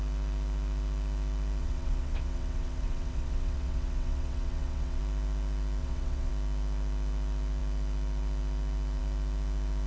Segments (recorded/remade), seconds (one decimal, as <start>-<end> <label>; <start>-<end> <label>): 0.0-1.6 recorded; 1.6-5.0 remade; 5.0-5.8 recorded; 5.8-6.3 remade; 6.3-9.9 recorded